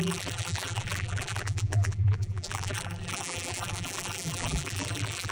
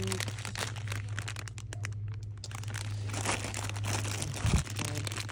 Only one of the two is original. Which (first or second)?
second